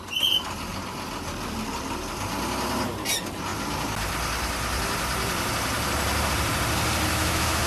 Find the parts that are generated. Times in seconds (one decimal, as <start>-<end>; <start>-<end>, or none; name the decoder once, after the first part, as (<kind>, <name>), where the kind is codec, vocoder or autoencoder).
7.1-7.7 (autoencoder, DAC-VAE)